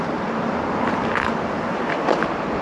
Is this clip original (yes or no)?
yes